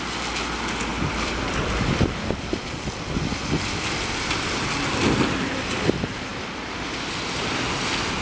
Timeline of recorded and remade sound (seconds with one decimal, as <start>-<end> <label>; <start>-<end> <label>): 0.0-0.9 recorded; 0.9-4.7 remade; 4.7-8.2 recorded